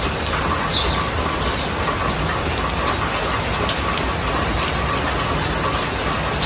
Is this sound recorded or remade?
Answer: recorded